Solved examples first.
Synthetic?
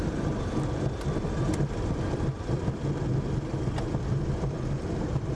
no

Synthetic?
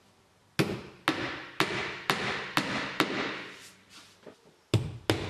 no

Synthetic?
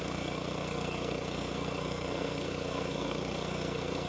yes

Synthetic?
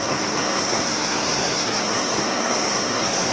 yes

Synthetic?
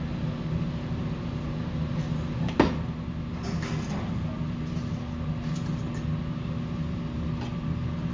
no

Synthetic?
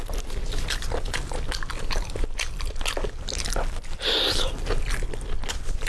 no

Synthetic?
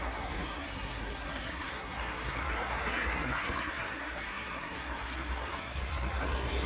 yes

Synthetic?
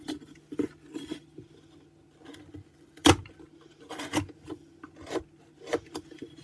no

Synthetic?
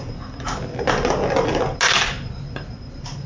no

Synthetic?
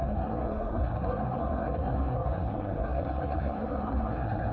yes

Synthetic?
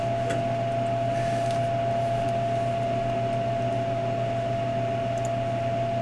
no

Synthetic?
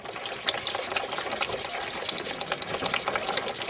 no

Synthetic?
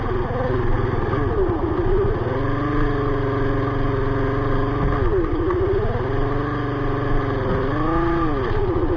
no